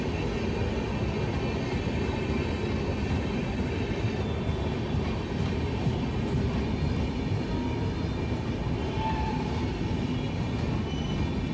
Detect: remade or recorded recorded